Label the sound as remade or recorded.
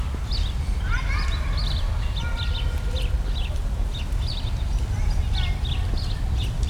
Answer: recorded